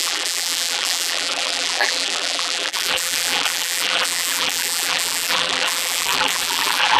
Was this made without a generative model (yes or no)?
no